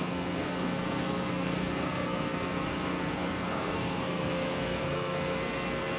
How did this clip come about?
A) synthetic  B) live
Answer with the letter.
A